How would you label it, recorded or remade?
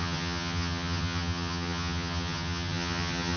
remade